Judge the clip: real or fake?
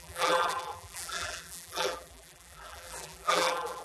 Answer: fake